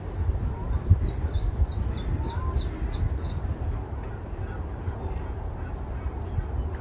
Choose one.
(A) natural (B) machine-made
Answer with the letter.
A